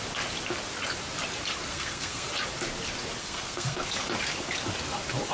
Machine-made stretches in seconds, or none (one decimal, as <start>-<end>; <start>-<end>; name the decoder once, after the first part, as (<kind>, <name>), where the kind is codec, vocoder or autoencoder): 1.7-2.3 (codec, SNAC); 3.2-3.9